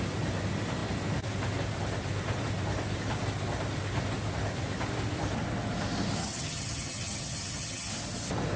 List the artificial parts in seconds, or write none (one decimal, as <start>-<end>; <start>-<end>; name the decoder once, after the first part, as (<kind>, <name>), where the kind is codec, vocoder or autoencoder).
6.2-7.9 (vocoder, HiFi-GAN)